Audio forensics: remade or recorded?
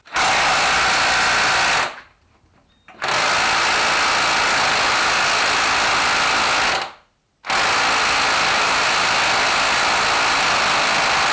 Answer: recorded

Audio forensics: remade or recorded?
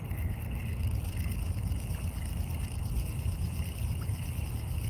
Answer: recorded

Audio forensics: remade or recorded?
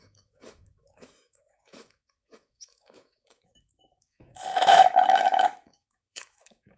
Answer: remade